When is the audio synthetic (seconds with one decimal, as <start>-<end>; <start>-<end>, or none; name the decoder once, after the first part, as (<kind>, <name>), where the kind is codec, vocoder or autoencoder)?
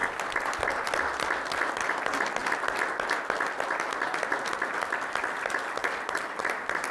none